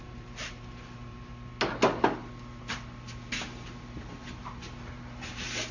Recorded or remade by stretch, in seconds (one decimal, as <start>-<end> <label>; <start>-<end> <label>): 0.0-1.3 remade; 1.3-4.7 recorded; 4.7-5.7 remade